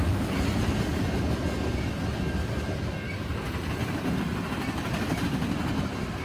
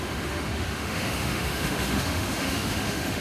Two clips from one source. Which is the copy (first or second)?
second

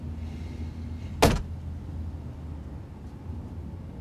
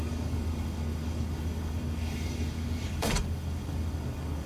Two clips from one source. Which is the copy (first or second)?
second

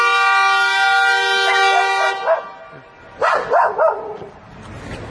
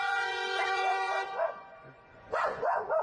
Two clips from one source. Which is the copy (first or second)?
second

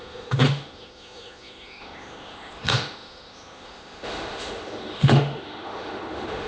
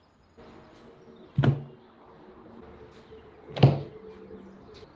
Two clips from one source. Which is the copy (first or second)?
first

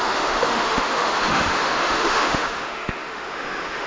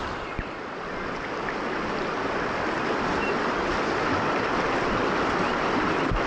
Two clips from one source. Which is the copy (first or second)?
first